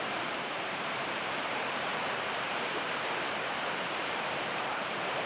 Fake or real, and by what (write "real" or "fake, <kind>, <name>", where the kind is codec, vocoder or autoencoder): fake, vocoder, BigVGAN v2